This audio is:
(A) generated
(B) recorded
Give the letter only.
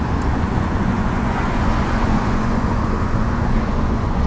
A